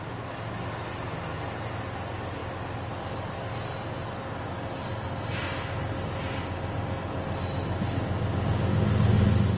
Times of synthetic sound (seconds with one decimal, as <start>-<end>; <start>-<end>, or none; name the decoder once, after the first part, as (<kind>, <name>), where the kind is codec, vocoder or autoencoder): none